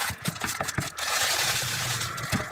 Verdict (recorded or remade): remade